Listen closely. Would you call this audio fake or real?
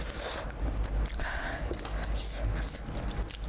real